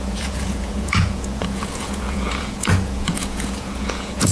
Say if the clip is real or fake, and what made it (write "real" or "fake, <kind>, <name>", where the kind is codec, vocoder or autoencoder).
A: fake, vocoder, Vocos